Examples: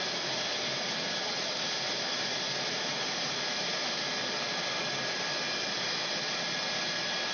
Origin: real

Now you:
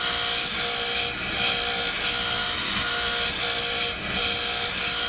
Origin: real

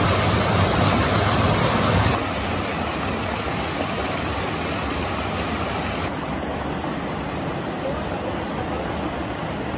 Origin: real